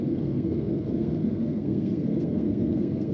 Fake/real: fake